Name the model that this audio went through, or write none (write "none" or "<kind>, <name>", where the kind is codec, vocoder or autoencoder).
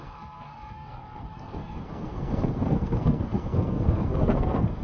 codec, SNAC